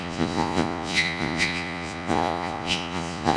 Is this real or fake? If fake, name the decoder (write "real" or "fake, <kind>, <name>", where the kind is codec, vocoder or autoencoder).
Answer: fake, vocoder, Vocos